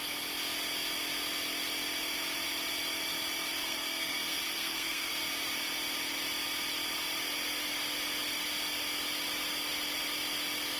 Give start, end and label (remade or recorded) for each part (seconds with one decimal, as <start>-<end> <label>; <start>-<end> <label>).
0.0-3.6 recorded; 3.6-5.1 remade; 5.1-10.8 recorded